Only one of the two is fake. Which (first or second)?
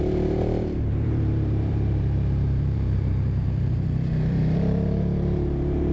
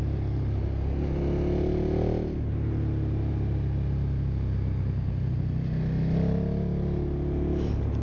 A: first